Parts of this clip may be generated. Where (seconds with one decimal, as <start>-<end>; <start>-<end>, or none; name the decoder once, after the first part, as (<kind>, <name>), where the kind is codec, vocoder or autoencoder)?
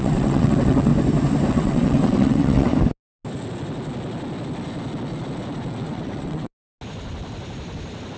0.0-0.9 (vocoder, WaveNeXt); 1.5-2.7; 5.7-6.5